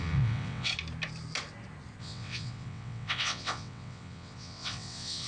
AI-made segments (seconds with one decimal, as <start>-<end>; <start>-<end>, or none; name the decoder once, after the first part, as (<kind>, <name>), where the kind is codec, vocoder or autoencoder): 0.0-0.7 (vocoder, WaveNeXt); 2.0-5.3